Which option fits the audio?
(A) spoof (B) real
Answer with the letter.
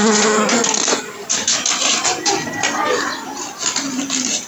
B